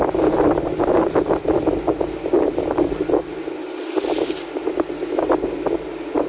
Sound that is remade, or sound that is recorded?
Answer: recorded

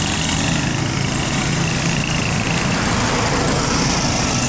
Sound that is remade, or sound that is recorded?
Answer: recorded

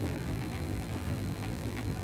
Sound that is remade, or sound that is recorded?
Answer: remade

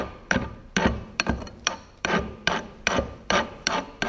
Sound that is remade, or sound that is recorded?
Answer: remade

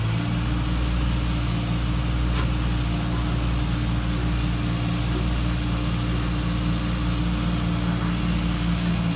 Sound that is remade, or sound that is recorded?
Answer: recorded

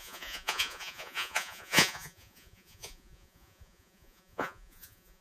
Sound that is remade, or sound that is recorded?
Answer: remade